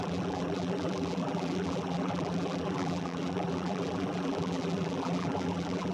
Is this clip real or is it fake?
fake